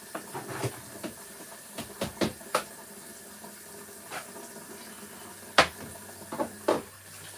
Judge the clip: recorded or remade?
recorded